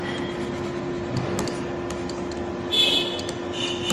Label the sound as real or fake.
real